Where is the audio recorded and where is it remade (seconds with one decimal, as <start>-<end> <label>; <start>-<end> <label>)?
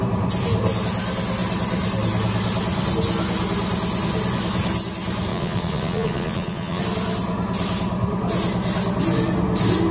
0.0-5.3 recorded; 5.3-6.8 remade; 6.8-9.9 recorded